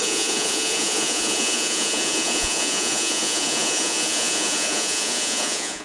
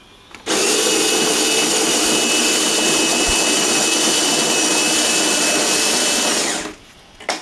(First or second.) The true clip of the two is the second